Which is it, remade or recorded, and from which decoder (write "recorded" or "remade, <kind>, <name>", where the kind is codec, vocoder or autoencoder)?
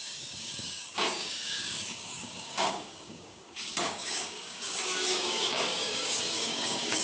remade, codec, DAC